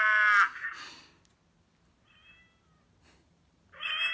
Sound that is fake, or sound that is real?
real